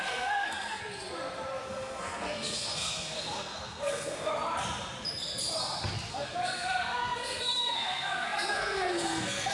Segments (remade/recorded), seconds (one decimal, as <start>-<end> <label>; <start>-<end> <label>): 0.0-0.8 remade; 0.8-1.7 recorded; 1.7-4.3 remade; 4.3-6.1 recorded; 6.1-9.5 remade